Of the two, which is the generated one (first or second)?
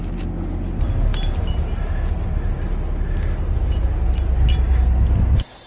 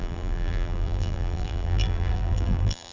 second